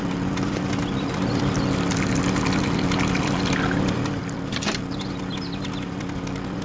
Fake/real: fake